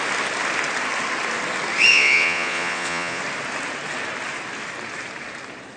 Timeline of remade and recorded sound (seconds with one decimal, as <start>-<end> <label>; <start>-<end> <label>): 0.0-1.9 recorded; 1.9-3.2 remade; 3.2-5.8 recorded